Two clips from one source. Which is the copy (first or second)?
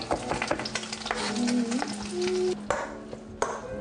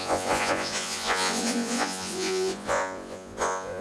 second